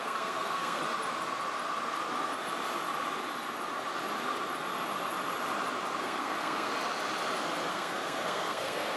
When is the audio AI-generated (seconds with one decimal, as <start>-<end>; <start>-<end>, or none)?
0.0-0.8; 6.0-6.7; 7.7-9.0